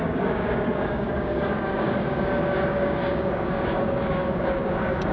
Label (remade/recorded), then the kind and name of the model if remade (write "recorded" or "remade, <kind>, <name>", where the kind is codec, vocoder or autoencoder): remade, codec, DAC